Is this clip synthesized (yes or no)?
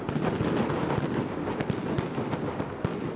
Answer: no